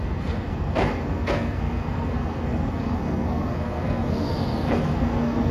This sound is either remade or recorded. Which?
remade